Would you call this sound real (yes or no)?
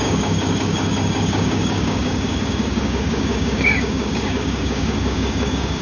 no